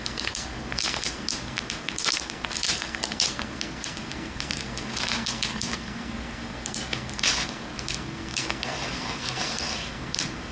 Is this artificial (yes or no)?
yes